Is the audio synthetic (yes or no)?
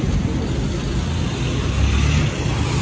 no